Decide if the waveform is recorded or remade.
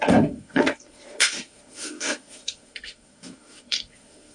remade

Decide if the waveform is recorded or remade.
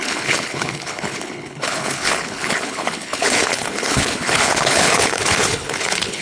remade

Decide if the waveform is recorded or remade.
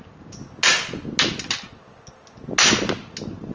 recorded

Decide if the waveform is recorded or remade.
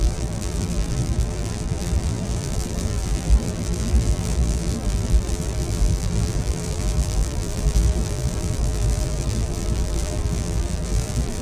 remade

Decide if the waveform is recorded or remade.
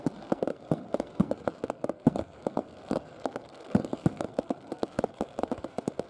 remade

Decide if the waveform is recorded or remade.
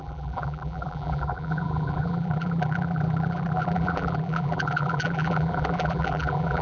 remade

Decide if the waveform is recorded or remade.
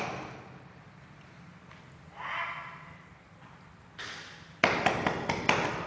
recorded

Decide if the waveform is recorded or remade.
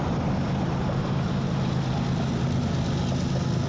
recorded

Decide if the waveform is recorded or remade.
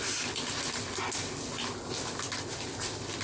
recorded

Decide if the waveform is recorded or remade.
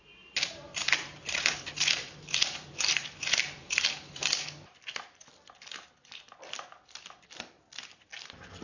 remade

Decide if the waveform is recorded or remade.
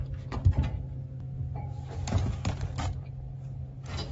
recorded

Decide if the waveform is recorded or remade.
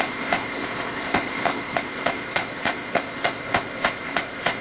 remade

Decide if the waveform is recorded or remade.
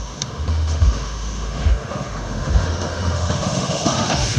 remade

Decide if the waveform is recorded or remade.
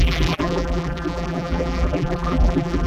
remade